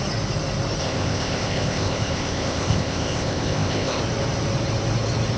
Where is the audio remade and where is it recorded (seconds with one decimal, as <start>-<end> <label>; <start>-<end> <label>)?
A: 0.0-0.8 recorded; 0.8-4.0 remade; 4.0-5.4 recorded